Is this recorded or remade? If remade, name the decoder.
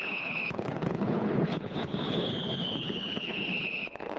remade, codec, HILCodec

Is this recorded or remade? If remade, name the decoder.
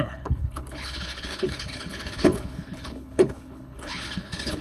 remade, codec, HILCodec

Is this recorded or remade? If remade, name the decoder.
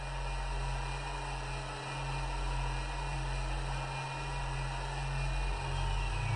recorded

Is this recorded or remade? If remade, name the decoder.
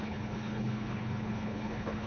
remade, codec, HILCodec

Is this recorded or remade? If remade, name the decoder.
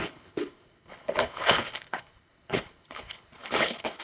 remade, codec, HILCodec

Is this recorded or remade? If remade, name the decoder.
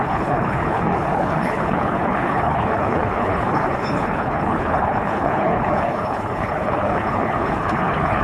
remade, codec, HILCodec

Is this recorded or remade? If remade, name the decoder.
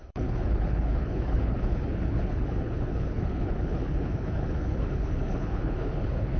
remade, codec, HILCodec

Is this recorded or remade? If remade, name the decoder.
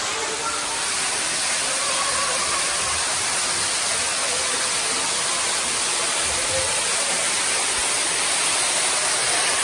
recorded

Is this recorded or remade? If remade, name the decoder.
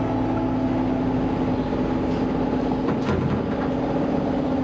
recorded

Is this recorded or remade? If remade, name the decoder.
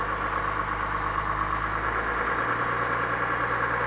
recorded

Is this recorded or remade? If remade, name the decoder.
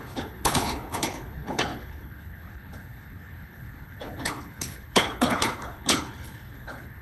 remade, codec, HILCodec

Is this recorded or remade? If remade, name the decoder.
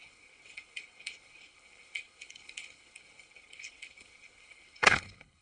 remade, codec, HILCodec